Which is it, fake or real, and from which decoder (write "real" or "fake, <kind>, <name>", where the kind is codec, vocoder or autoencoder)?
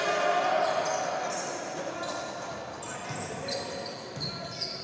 real